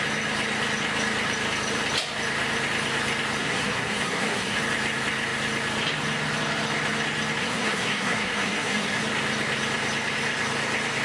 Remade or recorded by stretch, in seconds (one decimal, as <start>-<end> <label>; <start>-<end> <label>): 0.0-3.4 recorded; 3.4-4.6 remade; 4.6-7.4 recorded; 7.4-9.0 remade; 9.0-11.0 recorded